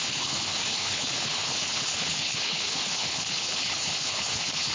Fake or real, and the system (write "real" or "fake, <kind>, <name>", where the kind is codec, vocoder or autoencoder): fake, codec, HILCodec